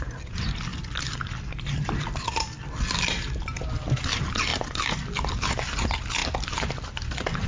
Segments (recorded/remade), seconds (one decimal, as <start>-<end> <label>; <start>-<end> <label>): 0.0-7.5 recorded